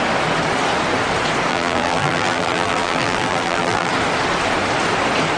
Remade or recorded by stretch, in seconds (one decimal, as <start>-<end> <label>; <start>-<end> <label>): 0.0-1.5 recorded; 1.5-3.9 remade; 3.9-5.4 recorded